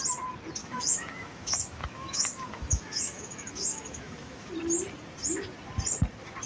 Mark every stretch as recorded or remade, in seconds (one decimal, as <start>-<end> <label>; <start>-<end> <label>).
0.0-0.6 recorded; 0.6-4.5 remade; 4.5-6.5 recorded